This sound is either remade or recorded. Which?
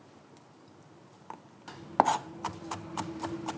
recorded